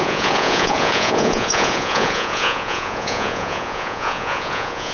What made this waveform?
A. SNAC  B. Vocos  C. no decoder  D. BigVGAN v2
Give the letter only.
B